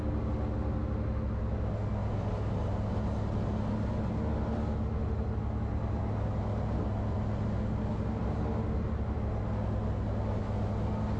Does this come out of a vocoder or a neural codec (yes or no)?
no